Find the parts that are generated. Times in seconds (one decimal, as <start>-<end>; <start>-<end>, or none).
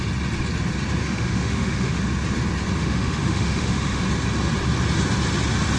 1.0-2.0; 2.8-4.0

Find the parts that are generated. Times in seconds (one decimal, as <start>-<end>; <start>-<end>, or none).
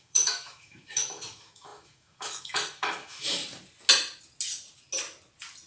0.0-3.4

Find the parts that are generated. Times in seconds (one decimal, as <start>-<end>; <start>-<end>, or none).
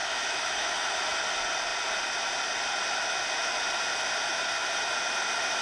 0.0-0.8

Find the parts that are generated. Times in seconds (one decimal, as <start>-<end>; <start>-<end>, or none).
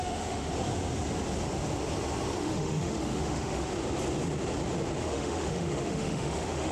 0.0-0.5; 2.4-3.7; 5.0-6.7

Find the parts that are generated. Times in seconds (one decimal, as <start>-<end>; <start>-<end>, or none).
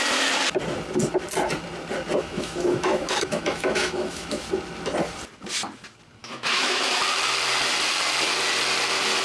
2.2-4.4; 6.2-7.0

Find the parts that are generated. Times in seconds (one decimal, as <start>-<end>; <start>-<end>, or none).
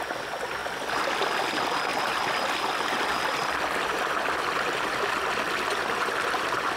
none